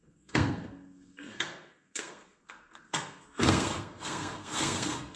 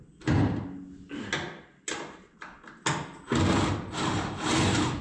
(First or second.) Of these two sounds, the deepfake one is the first